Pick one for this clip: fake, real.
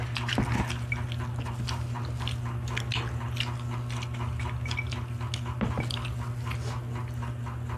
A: real